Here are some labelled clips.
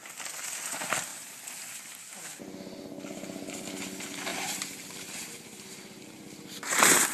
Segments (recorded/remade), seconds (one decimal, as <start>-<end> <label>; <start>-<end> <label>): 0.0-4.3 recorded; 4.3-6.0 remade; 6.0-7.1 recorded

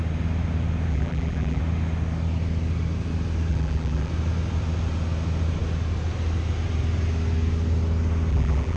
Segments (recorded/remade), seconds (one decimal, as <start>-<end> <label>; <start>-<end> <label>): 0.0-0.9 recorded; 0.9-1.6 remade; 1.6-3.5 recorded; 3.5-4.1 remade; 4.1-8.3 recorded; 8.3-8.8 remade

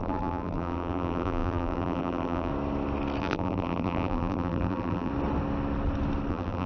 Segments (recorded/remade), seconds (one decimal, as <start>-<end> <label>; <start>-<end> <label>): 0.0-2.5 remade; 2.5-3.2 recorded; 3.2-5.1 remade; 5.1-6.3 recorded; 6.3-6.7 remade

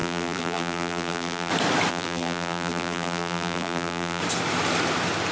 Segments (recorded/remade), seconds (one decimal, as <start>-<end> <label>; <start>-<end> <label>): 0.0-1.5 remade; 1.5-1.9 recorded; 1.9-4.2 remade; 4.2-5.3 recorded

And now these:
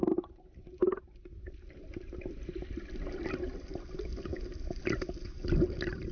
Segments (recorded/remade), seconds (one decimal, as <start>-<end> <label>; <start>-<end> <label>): 0.0-3.7 remade; 3.7-4.3 recorded; 4.3-4.8 remade; 4.8-6.1 recorded